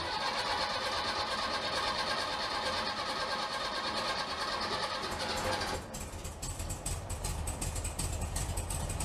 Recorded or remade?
recorded